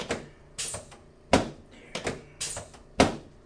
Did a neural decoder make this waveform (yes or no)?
no